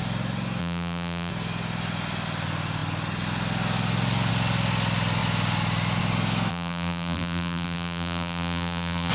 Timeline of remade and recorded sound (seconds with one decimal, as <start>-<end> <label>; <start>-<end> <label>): 0.0-0.6 recorded; 0.6-1.3 remade; 1.3-6.5 recorded; 6.5-9.1 remade